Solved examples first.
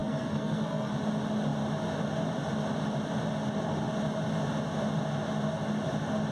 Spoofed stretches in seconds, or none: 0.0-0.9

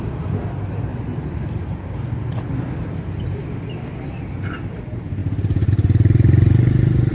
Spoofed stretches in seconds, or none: none

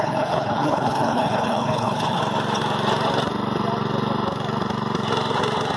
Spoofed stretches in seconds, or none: 0.0-2.2

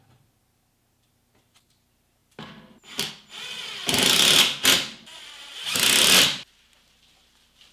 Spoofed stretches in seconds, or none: none

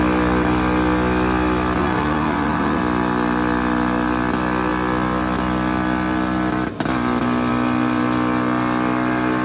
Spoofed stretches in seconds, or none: 1.8-2.8

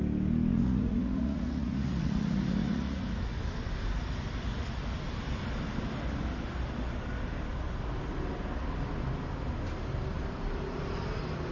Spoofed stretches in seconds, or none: 0.5-3.0